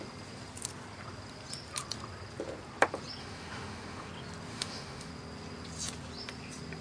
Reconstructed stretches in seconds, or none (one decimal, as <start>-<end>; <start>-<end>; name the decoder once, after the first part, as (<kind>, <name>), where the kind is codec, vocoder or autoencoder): 3.2-4.1 (autoencoder, DAC-VAE); 4.5-5.1